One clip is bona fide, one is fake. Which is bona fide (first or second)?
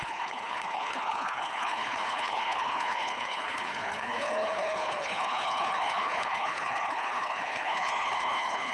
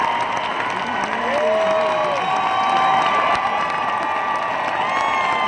second